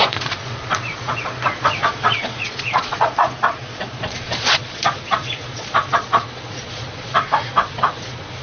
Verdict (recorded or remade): remade